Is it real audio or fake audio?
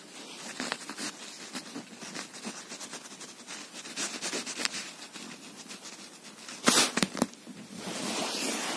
real